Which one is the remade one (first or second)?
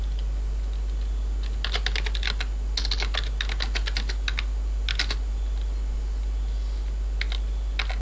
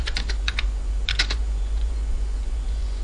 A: second